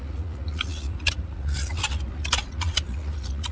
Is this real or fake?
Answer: fake